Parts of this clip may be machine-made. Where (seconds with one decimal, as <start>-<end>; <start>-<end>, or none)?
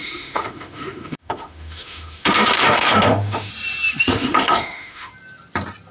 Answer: 0.0-3.5; 4.1-5.1